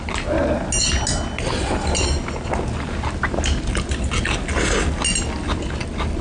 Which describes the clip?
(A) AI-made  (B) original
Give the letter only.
B